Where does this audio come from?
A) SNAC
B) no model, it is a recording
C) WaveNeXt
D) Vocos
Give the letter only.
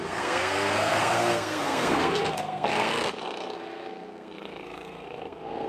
A